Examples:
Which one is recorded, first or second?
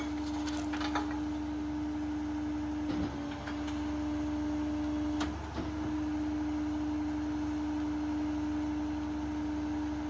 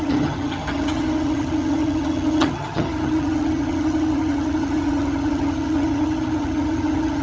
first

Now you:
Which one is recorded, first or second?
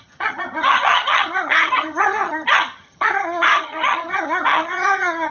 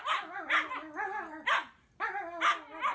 second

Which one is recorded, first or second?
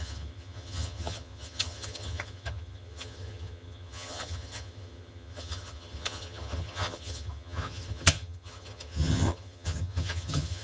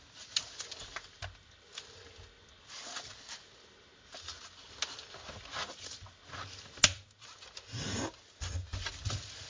second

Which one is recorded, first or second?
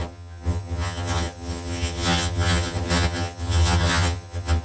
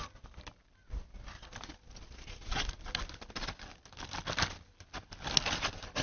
second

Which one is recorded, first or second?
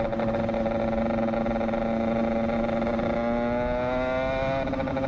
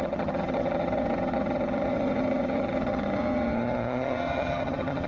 first